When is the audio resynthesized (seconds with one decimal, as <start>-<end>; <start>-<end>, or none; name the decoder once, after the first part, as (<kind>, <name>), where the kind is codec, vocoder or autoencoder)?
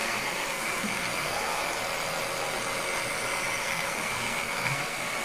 0.0-1.8 (codec, SNAC); 3.6-5.2